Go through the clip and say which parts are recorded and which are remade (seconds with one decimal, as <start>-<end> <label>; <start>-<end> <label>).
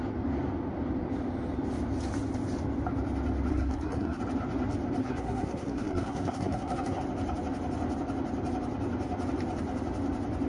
0.0-3.5 recorded; 3.5-4.2 remade; 4.2-5.0 recorded; 5.0-7.0 remade; 7.0-10.5 recorded